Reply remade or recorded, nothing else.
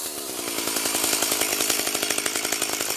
remade